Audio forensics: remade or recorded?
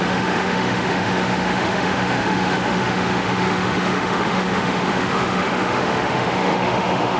remade